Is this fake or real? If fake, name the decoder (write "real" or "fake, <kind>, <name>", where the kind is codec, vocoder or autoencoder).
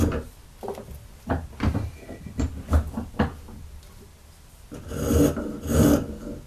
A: real